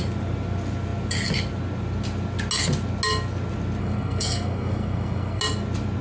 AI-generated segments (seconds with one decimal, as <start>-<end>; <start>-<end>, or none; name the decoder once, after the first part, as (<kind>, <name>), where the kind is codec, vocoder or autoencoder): 3.8-5.4 (codec, SNAC)